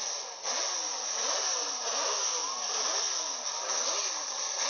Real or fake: fake